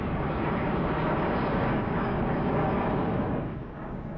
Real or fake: fake